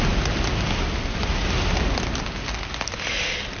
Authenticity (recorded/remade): recorded